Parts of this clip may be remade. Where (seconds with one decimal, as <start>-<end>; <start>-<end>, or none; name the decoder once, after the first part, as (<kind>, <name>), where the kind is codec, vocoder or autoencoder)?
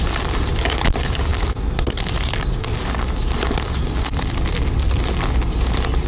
none